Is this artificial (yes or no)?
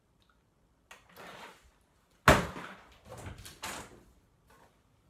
no